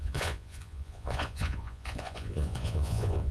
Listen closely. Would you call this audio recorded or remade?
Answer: remade